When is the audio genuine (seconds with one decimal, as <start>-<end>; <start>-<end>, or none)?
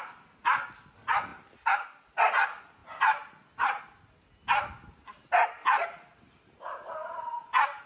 0.0-7.9